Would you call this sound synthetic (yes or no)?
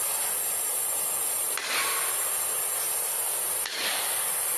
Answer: no